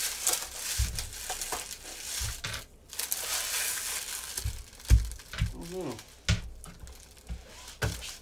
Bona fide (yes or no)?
yes